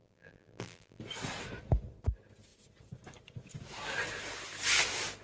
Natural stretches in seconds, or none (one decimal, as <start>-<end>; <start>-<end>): 1.0-5.2